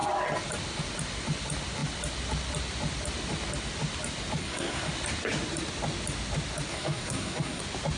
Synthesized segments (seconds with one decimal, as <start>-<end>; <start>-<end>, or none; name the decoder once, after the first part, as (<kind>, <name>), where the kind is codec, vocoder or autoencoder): 4.4-4.9 (codec, SNAC); 6.7-7.6